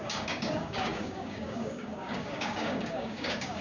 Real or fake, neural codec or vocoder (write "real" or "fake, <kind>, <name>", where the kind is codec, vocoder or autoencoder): fake, codec, DAC